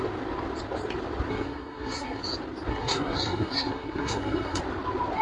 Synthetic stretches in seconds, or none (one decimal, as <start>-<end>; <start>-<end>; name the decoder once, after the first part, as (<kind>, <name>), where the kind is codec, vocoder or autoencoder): 1.3-2.2 (codec, SNAC); 2.7-4.6